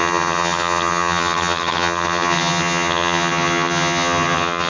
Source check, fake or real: fake